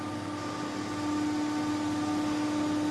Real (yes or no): yes